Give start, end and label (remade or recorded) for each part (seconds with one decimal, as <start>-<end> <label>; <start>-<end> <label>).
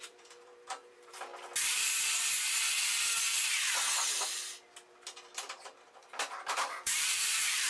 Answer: 0.0-1.3 remade; 1.3-5.9 recorded; 5.9-7.7 remade